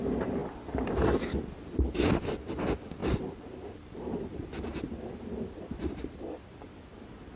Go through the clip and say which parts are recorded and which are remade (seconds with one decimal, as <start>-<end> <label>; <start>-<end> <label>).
0.0-0.4 remade; 0.4-1.8 recorded; 1.8-7.4 remade